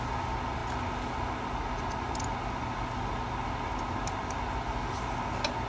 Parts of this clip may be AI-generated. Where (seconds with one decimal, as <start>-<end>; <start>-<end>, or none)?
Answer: none